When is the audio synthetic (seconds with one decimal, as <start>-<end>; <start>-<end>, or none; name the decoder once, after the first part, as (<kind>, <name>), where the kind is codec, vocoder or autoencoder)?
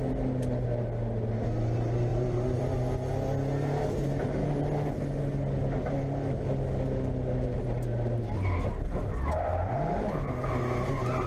2.1-2.6 (vocoder, BigVGAN v2)